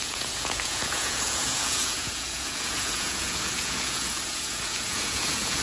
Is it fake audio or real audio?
fake